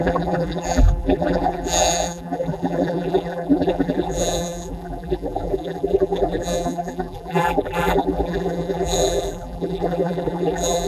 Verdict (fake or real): fake